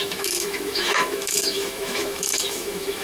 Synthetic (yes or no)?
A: yes